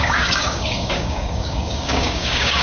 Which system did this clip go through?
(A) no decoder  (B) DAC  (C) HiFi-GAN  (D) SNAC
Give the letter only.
B